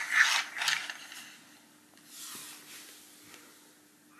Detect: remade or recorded recorded